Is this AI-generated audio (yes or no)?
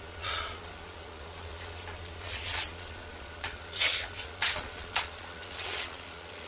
yes